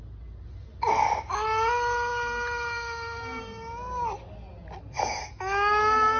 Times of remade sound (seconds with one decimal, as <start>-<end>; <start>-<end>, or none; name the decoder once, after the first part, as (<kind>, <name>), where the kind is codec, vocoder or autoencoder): none